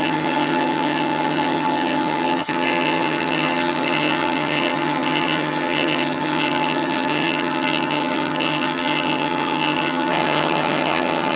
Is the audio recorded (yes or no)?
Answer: no